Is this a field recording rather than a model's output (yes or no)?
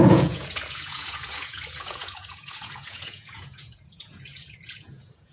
no